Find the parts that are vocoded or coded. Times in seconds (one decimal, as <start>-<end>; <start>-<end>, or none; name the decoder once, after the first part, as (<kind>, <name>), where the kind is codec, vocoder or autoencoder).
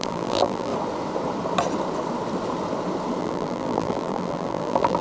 0.0-0.7 (vocoder, BigVGAN v2); 3.2-5.0